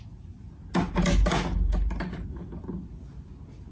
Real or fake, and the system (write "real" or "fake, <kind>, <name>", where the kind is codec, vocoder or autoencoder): real